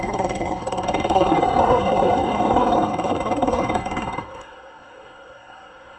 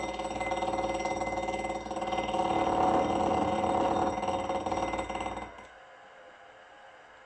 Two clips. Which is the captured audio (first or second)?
second